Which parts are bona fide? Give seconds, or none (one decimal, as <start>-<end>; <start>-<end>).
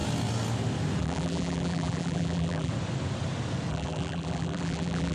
0.0-1.0; 2.7-3.7